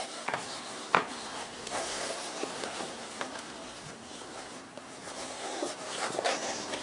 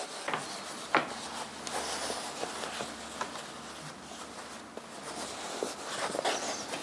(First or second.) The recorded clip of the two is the second